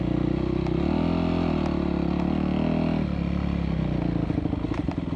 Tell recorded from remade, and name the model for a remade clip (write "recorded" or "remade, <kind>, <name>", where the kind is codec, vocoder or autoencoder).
recorded